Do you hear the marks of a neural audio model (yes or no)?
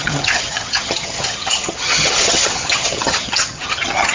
yes